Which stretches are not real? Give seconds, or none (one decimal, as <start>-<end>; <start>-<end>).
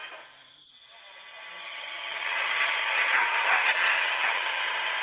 1.6-4.6